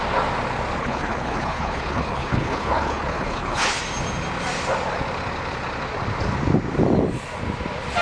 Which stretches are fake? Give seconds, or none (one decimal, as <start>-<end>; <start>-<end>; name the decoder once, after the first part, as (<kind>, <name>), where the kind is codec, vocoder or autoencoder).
0.8-3.8 (codec, HILCodec)